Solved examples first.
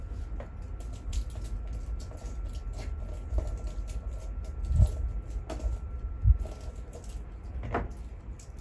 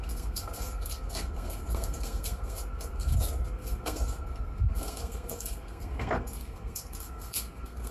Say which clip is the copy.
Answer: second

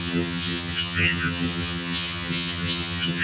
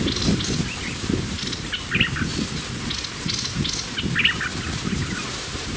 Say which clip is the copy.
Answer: first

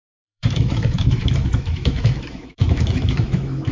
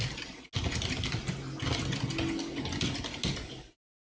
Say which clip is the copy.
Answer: first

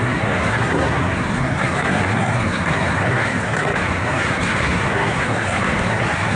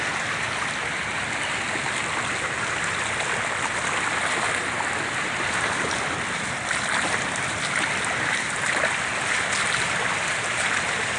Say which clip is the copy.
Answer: first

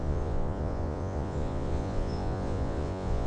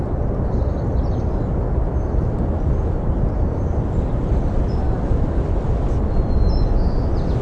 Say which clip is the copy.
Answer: first